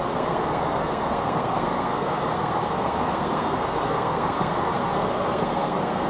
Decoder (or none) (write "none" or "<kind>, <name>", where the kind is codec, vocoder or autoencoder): codec, SNAC